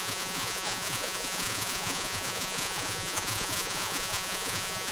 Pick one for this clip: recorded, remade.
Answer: remade